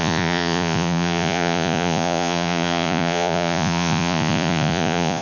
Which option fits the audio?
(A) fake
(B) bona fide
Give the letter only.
A